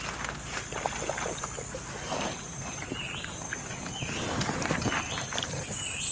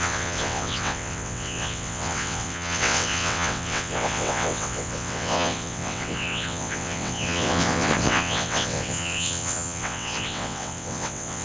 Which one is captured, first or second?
first